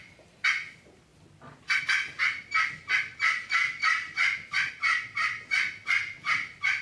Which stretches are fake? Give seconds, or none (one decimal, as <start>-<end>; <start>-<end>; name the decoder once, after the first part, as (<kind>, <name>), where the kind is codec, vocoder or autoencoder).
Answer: none